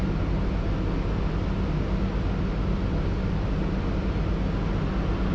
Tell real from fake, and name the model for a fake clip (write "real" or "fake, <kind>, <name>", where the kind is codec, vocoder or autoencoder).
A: real